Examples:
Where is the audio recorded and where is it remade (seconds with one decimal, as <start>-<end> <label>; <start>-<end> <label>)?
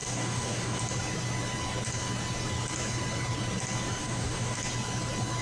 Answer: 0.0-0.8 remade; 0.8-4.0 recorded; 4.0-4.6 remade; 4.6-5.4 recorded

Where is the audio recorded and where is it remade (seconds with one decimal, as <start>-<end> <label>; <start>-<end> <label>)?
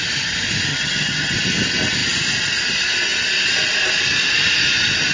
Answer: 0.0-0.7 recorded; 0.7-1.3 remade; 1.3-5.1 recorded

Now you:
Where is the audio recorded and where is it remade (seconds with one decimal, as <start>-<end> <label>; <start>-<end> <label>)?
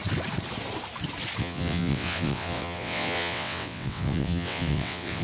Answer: 0.0-1.4 recorded; 1.4-5.2 remade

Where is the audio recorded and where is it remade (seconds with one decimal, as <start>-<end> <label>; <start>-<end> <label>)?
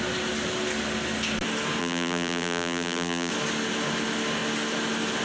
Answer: 0.0-1.8 recorded; 1.8-3.3 remade; 3.3-5.2 recorded